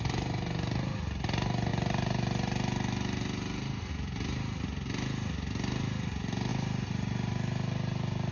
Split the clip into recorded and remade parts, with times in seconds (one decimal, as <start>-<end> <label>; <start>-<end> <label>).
0.0-8.3 recorded